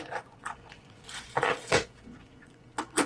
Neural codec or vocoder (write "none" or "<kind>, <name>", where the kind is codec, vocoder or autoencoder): vocoder, Vocos